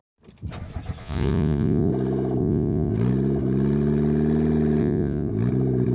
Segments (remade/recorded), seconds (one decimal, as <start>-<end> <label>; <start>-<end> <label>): 0.0-1.0 recorded; 1.0-1.9 remade; 1.9-2.4 recorded; 2.4-2.9 remade; 2.9-4.8 recorded; 4.8-5.3 remade; 5.3-5.9 recorded